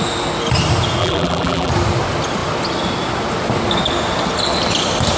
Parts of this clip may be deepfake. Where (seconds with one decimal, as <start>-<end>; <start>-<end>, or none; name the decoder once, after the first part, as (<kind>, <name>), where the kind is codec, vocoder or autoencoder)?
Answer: 1.0-1.7 (vocoder, BigVGAN v2)